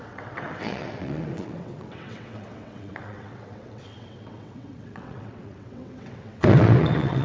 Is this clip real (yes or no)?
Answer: no